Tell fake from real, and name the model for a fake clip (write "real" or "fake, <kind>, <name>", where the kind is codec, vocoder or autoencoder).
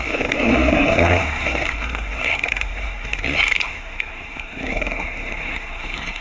fake, codec, SNAC